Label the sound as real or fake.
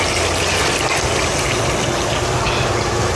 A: real